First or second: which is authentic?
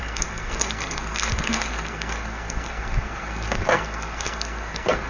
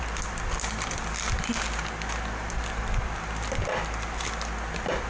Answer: second